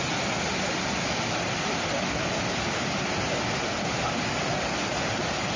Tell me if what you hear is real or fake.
real